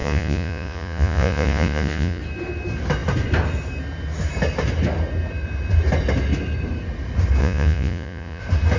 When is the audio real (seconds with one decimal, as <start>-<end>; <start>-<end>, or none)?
2.2-7.4; 8.4-8.8